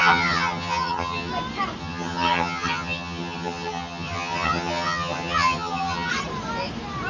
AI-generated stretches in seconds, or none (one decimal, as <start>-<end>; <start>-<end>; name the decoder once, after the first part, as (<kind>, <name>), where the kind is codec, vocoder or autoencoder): 0.0-1.3 (vocoder, HiFi-GAN); 1.8-6.1